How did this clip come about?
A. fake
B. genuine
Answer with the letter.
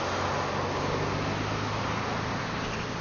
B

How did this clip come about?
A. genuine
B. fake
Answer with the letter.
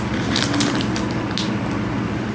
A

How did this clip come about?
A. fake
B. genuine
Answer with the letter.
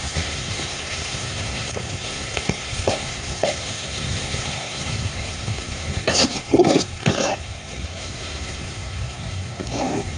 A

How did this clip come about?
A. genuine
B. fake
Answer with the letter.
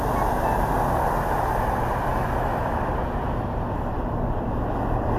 A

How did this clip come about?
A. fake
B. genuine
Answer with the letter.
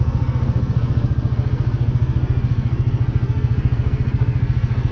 A